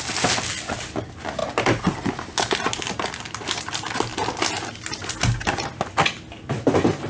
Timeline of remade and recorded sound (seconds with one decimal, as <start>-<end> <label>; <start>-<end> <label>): 0.0-7.1 recorded